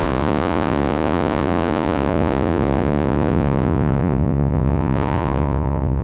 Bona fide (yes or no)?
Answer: no